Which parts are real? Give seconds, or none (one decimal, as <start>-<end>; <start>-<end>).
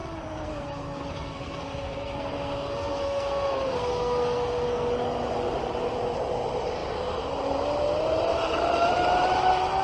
4.9-9.8